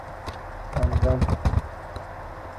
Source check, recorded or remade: recorded